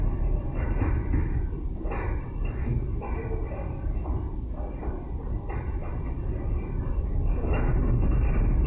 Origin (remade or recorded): recorded